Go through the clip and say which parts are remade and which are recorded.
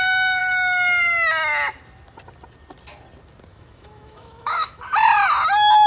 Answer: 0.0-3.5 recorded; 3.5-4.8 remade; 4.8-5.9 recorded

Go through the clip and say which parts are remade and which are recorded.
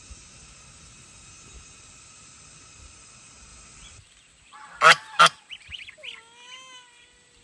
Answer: 0.0-7.4 recorded